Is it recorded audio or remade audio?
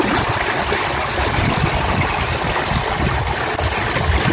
recorded